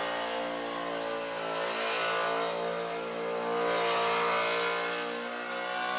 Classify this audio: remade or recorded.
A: recorded